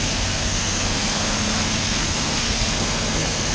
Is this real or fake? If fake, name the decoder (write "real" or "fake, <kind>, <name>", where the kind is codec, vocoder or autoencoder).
fake, codec, SNAC